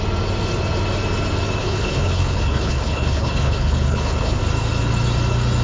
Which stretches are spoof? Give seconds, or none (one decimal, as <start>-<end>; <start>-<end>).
1.6-4.4

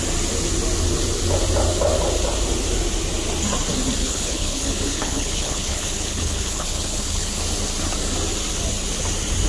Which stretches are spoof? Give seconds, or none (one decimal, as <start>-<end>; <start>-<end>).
4.0-7.4

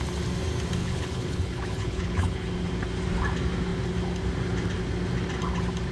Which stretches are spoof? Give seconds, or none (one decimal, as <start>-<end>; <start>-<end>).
0.8-2.5

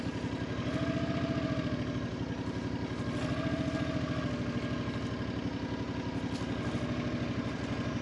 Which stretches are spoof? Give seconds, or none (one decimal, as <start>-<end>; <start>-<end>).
none

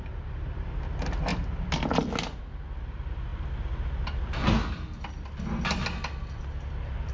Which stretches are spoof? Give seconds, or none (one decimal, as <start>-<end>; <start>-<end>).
none

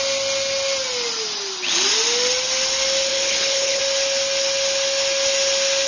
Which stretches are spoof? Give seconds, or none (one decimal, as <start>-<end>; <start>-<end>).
3.1-3.8

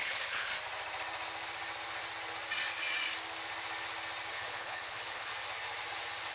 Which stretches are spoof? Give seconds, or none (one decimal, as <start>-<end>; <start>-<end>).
0.0-0.5; 4.3-5.3

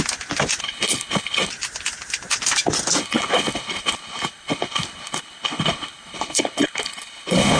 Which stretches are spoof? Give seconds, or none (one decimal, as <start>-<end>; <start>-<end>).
0.6-1.5; 3.0-7.6